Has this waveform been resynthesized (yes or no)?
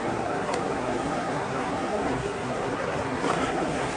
yes